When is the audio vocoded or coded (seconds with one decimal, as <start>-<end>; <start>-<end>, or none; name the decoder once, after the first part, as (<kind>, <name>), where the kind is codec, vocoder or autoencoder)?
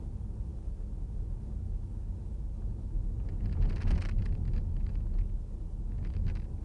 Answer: none